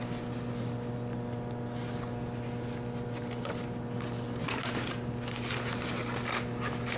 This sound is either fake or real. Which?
real